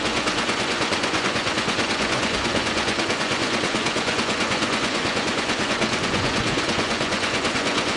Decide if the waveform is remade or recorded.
remade